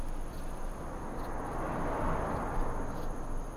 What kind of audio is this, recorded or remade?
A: recorded